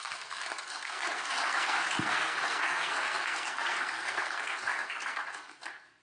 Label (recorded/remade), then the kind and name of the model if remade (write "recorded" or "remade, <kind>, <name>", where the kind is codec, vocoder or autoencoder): remade, codec, SNAC